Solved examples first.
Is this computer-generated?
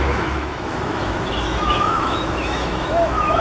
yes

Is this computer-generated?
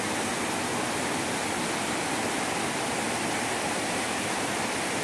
no